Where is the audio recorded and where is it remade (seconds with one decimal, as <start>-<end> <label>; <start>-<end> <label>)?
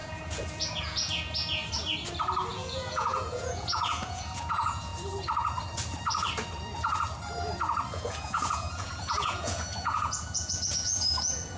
0.0-1.6 remade; 1.6-2.5 recorded; 2.5-4.9 remade; 4.9-7.9 recorded; 7.9-11.6 remade